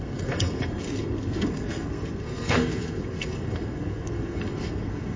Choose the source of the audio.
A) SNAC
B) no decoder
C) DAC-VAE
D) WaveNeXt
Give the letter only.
A